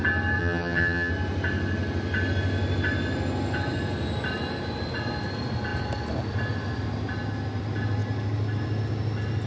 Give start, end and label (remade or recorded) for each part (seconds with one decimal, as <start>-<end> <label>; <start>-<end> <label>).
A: 0.0-0.4 recorded; 0.4-1.1 remade; 1.1-9.5 recorded

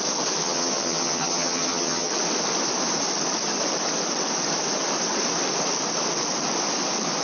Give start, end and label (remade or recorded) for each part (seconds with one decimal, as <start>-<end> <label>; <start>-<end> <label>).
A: 0.0-0.4 recorded; 0.4-2.1 remade; 2.1-7.2 recorded

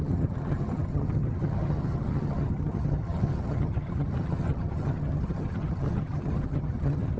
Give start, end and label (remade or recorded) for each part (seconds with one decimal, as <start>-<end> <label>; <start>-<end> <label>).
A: 0.0-7.2 remade

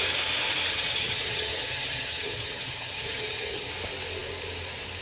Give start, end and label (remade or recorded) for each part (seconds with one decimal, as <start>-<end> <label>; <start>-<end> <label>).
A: 0.0-0.7 recorded; 0.7-3.7 remade; 3.7-5.0 recorded

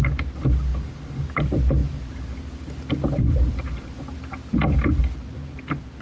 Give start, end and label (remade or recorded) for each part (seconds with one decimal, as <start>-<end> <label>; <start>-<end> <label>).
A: 0.0-6.0 recorded

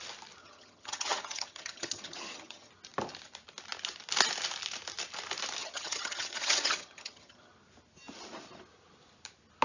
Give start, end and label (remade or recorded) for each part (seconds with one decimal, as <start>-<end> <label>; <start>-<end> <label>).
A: 0.0-0.4 recorded; 0.4-2.7 remade; 2.7-5.6 recorded; 5.6-7.5 remade; 7.5-9.6 recorded